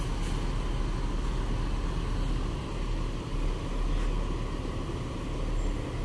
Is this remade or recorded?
recorded